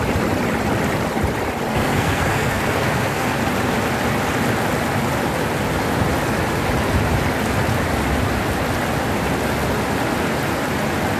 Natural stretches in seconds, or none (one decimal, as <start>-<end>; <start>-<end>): 0.0-1.7; 3.4-11.2